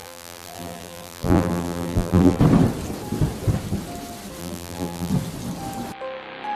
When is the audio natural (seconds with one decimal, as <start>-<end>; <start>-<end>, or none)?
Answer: 2.4-4.4; 5.1-6.6